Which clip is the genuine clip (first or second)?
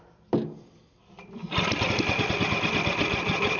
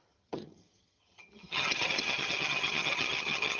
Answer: first